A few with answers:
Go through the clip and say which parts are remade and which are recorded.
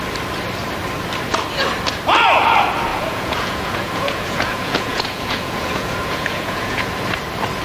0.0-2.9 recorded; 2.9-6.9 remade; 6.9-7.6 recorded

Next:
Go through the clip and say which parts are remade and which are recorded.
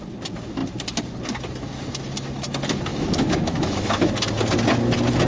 0.0-2.9 recorded; 2.9-4.1 remade; 4.1-5.3 recorded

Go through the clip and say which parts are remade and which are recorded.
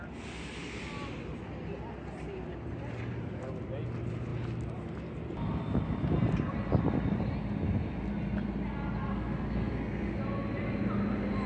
0.0-9.1 recorded; 9.1-10.2 remade; 10.2-11.5 recorded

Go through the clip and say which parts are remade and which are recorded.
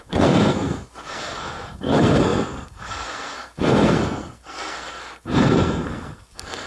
0.0-6.7 remade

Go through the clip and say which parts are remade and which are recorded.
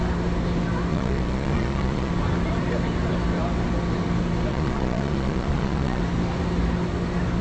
0.0-0.9 recorded; 0.9-2.1 remade; 2.1-4.5 recorded; 4.5-6.0 remade; 6.0-7.4 recorded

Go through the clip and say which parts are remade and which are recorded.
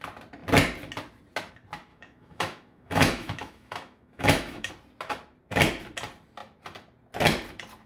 0.0-1.9 recorded; 1.9-4.7 remade; 4.7-7.9 recorded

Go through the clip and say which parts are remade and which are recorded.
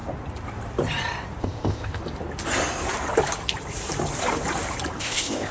0.0-1.4 recorded; 1.4-2.0 remade; 2.0-5.0 recorded; 5.0-5.5 remade